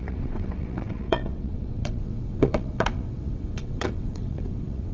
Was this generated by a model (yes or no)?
yes